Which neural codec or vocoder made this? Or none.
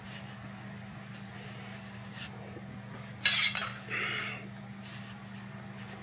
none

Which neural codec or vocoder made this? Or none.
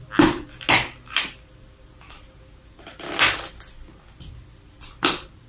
none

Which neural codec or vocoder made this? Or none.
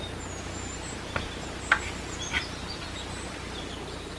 none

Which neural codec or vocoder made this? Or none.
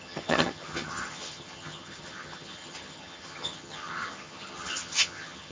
vocoder, HiFi-GAN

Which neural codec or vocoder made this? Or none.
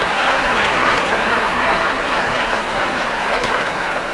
codec, SNAC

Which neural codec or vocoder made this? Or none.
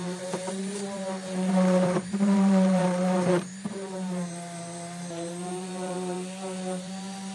vocoder, BigVGAN v2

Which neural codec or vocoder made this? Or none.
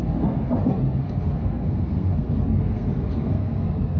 codec, SNAC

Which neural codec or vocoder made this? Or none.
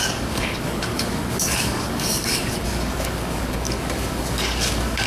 codec, DAC